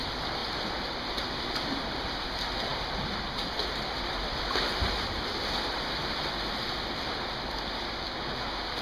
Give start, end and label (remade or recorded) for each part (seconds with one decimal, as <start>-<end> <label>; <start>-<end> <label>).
0.0-8.8 recorded